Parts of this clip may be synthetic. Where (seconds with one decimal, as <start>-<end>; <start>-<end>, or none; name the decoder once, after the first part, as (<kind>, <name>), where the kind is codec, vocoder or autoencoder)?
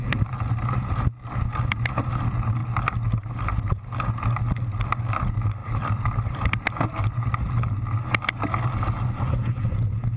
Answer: 5.6-6.5 (vocoder, BigVGAN v2)